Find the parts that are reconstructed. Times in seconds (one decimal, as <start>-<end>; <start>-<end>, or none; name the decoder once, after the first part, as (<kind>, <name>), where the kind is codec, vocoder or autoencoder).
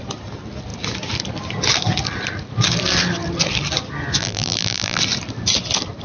4.2-5.0 (vocoder, BigVGAN v2)